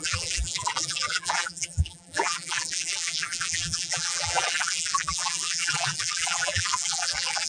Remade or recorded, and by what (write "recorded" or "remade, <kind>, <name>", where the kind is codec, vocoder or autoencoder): remade, vocoder, BigVGAN v2